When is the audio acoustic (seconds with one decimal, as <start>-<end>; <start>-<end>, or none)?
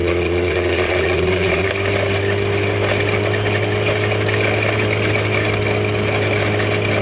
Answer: 1.7-7.0